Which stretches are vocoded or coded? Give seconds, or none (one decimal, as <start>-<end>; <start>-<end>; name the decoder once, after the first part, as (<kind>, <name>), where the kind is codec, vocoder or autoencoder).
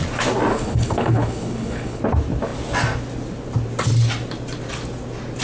0.5-2.0 (codec, HILCodec)